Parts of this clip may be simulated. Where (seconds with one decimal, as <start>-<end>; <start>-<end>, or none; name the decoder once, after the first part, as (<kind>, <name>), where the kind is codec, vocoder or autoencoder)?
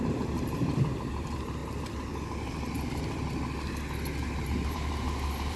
0.0-1.6 (vocoder, BigVGAN v2); 4.4-5.6